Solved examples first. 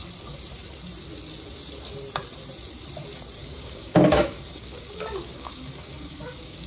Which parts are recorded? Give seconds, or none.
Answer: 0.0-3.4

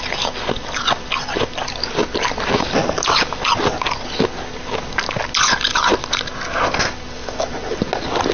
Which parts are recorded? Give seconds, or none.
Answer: 0.0-8.3